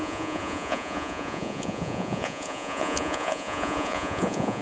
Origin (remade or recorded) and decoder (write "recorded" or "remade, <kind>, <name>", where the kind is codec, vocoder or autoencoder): remade, vocoder, Vocos